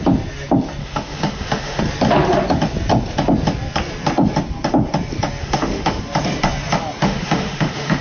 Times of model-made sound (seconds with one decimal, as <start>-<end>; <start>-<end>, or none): 0.8-1.8; 5.4-6.0; 7.0-8.0